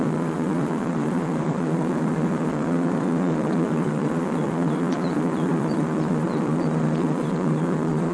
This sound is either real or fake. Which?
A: fake